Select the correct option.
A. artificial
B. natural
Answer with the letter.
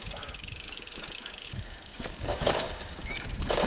A